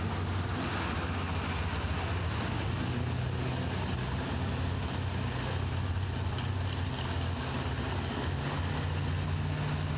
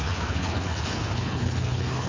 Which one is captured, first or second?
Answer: first